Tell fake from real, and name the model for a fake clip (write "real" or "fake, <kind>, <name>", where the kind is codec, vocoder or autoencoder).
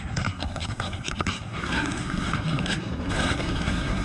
fake, codec, SNAC